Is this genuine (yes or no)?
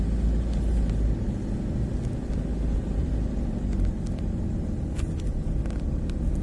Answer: yes